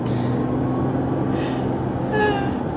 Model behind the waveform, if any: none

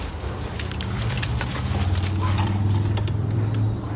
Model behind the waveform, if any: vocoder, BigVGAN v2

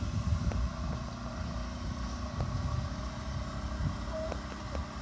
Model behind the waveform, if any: none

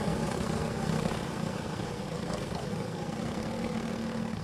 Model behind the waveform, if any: codec, SNAC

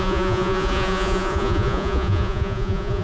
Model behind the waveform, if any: vocoder, Vocos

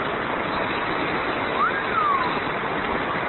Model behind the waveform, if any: none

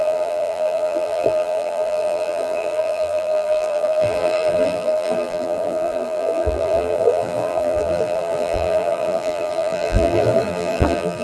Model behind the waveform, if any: vocoder, BigVGAN v2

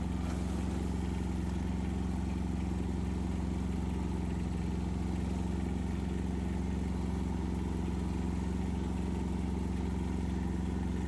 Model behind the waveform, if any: none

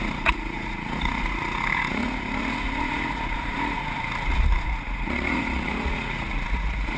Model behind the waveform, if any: vocoder, Vocos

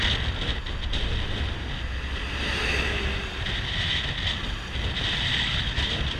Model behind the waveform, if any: none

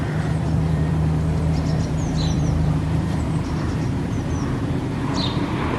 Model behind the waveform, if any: vocoder, BigVGAN v2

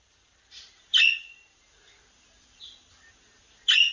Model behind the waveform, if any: none